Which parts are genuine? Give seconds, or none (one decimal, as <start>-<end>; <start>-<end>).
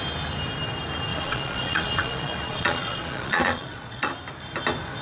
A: 0.0-1.1; 4.1-5.0